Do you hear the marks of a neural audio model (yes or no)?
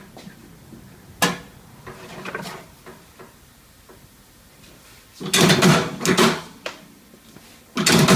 no